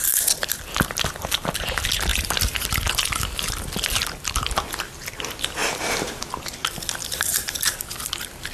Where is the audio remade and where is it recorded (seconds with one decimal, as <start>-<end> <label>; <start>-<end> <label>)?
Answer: 0.0-5.6 recorded; 5.6-6.2 remade; 6.2-7.0 recorded; 7.0-7.6 remade; 7.6-8.5 recorded